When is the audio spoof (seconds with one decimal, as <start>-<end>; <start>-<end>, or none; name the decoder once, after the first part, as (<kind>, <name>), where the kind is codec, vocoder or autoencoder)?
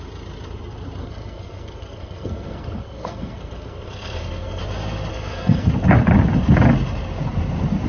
1.0-4.6 (codec, SNAC); 5.1-5.7